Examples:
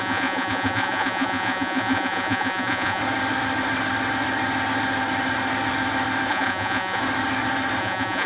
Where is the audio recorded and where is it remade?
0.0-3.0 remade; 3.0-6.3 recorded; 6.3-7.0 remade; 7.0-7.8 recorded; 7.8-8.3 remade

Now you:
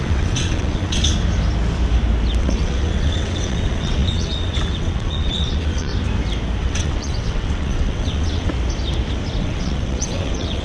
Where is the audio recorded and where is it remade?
0.0-1.1 remade; 1.1-2.4 recorded; 2.4-5.9 remade; 5.9-6.6 recorded; 6.6-8.5 remade; 8.5-9.4 recorded; 9.4-10.6 remade

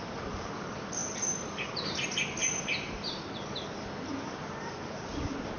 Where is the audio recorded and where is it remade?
0.0-1.0 recorded; 1.0-1.7 remade; 1.7-2.4 recorded; 2.4-3.1 remade; 3.1-5.6 recorded

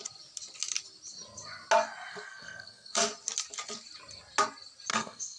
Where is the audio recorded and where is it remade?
0.0-2.1 recorded; 2.1-3.0 remade; 3.0-4.9 recorded; 4.9-5.4 remade